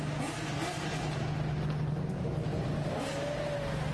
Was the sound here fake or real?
real